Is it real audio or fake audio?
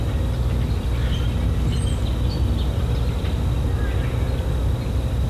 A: real